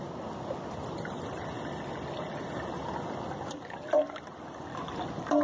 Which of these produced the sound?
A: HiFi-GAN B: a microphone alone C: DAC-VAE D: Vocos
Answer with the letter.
B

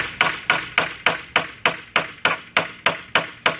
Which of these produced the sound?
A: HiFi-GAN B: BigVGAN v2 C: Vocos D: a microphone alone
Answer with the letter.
D